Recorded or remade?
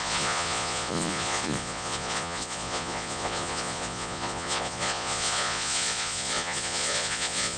remade